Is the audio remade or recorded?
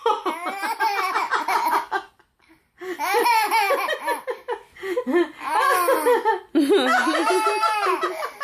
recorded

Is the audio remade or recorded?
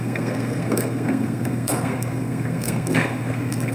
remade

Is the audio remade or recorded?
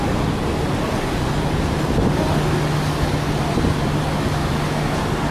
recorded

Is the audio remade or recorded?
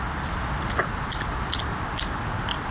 recorded